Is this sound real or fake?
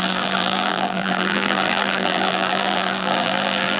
fake